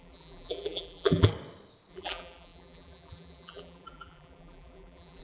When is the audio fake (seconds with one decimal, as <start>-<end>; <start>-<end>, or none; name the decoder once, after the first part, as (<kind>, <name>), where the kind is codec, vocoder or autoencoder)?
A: 0.0-1.3 (vocoder, BigVGAN v2); 1.9-5.2